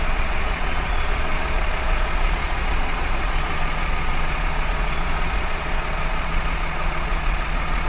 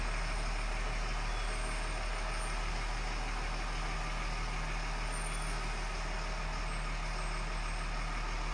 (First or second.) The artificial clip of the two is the first